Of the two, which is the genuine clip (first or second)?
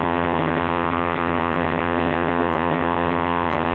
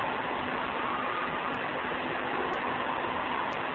second